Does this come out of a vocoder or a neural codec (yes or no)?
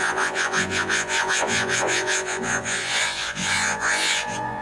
yes